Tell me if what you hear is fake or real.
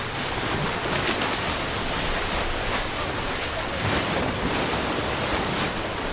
real